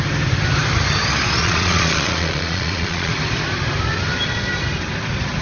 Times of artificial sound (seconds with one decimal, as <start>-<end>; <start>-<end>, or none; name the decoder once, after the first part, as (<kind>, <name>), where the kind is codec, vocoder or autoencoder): 1.4-3.1 (vocoder, Vocos)